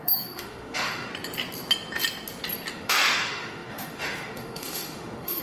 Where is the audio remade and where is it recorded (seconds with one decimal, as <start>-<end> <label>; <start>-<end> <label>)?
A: 0.0-1.1 remade; 1.1-2.7 recorded; 2.7-5.4 remade